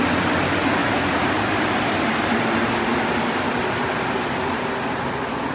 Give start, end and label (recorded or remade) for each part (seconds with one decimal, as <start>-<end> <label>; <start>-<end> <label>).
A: 0.0-0.8 recorded; 0.8-3.2 remade; 3.2-5.5 recorded